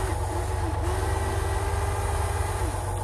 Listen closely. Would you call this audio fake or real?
real